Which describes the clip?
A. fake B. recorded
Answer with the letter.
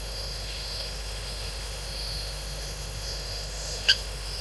A